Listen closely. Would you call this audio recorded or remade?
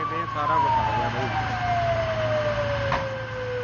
recorded